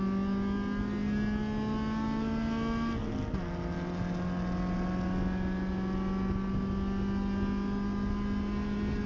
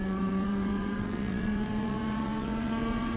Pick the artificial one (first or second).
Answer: second